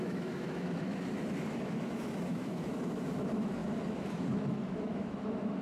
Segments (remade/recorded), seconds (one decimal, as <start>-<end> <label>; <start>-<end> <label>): 0.0-5.6 remade